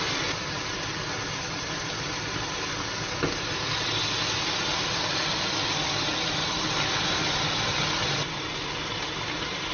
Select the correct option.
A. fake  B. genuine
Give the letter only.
B